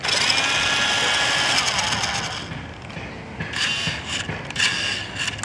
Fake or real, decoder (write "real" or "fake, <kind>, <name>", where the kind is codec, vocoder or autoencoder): real